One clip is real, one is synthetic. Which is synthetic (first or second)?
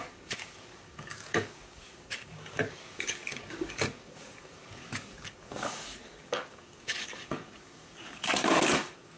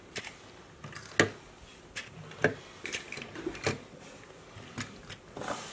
first